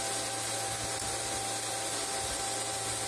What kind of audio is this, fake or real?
real